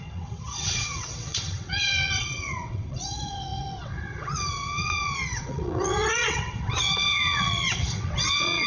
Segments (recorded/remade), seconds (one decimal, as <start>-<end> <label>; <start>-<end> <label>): 0.0-8.7 remade